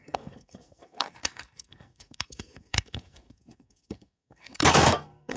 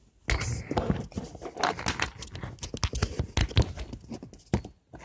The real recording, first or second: second